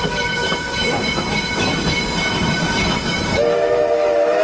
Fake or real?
fake